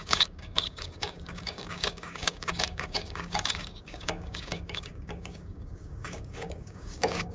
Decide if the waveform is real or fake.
fake